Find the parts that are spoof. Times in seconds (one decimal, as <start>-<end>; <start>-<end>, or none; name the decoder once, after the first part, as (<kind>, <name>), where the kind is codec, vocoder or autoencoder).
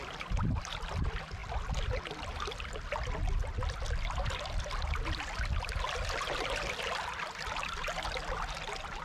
none